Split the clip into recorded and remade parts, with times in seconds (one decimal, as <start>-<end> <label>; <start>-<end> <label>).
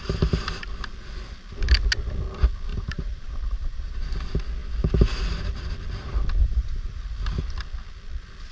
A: 0.0-2.7 recorded; 2.7-4.1 remade; 4.1-6.4 recorded; 6.4-7.0 remade; 7.0-8.5 recorded